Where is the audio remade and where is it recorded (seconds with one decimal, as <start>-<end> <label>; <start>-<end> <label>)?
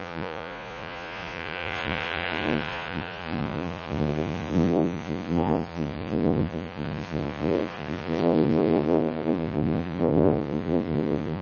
0.0-11.4 remade